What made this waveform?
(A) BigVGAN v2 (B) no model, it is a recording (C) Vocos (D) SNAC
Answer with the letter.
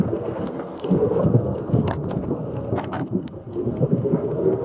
D